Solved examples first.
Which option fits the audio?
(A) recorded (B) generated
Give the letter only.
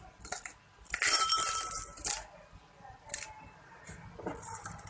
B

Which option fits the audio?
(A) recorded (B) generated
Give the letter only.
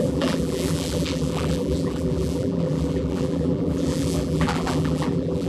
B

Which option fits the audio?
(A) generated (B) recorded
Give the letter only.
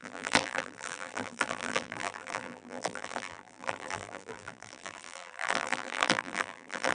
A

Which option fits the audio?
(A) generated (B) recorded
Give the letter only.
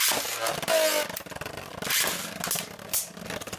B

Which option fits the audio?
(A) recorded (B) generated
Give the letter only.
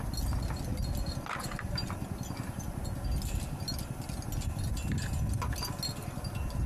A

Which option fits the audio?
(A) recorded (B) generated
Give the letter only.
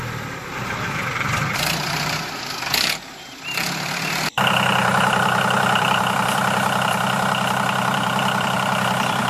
B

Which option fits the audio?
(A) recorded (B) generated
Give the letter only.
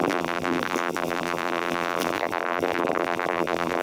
B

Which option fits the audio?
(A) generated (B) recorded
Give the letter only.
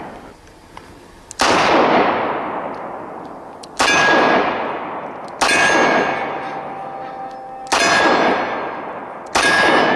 B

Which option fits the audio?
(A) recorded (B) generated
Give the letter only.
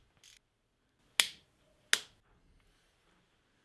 A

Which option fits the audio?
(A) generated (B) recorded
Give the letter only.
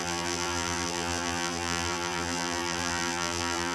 A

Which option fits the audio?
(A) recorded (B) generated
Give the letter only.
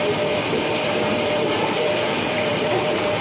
B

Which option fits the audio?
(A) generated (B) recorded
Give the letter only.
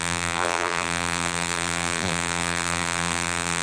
A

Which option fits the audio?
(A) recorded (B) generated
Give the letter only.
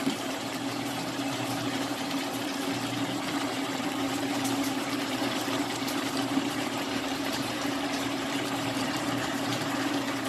B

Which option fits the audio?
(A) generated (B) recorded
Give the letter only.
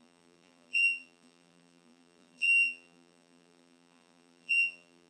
A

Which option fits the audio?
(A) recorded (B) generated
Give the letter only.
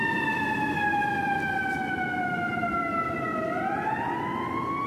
A